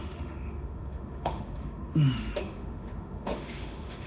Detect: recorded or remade remade